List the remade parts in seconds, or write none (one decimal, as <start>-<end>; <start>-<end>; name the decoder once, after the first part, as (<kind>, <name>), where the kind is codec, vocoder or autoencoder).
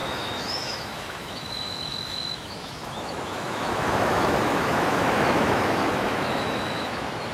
0.0-7.3 (autoencoder, DAC-VAE)